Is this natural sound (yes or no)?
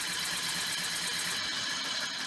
yes